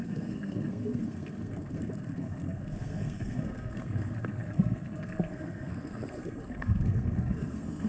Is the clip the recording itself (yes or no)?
no